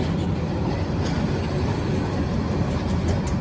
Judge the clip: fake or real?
real